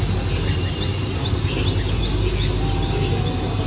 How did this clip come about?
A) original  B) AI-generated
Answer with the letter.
A